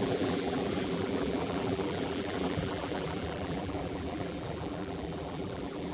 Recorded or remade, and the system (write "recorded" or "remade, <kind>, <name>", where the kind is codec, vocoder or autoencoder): remade, vocoder, BigVGAN v2